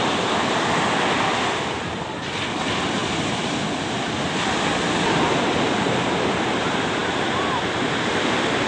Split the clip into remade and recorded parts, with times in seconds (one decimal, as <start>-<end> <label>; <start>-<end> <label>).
0.0-8.7 recorded